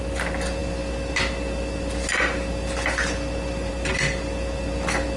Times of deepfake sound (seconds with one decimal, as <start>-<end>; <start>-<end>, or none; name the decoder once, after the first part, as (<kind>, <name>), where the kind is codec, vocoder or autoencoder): none